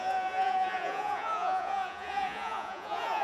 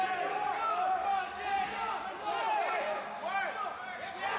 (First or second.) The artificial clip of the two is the first